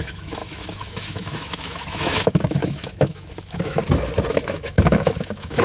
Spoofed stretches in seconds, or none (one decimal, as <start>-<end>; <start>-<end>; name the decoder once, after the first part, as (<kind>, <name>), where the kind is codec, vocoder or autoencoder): 0.0-3.8 (autoencoder, DAC-VAE); 4.3-5.6